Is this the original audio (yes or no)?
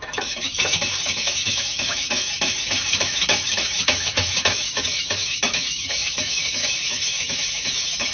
no